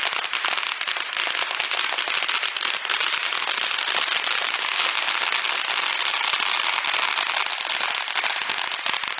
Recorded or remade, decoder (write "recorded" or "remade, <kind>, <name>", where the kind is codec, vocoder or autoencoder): recorded